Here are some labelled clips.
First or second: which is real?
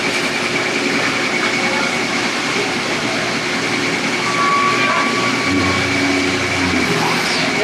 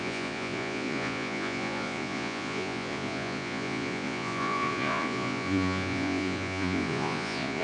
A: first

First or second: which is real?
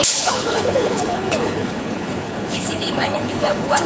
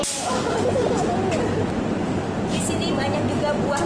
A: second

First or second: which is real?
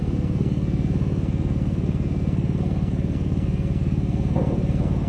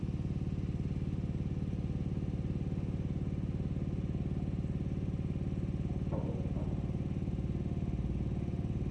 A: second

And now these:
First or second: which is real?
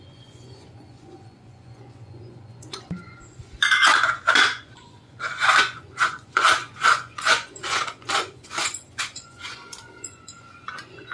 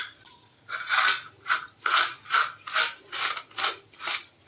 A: second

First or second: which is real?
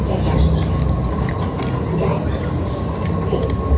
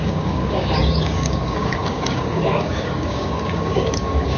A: first